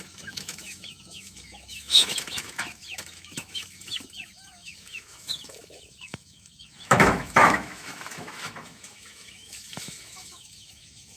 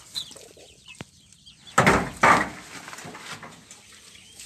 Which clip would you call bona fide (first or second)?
second